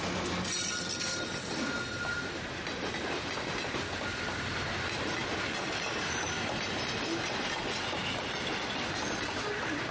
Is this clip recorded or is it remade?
recorded